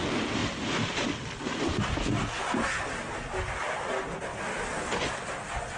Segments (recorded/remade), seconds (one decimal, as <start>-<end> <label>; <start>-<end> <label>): 0.0-5.8 recorded